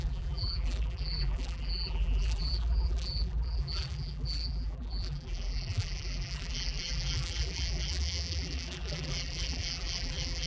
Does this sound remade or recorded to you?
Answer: remade